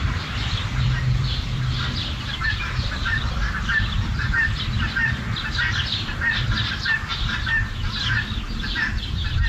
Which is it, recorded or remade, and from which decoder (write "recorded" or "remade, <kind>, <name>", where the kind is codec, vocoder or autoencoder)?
remade, vocoder, BigVGAN v2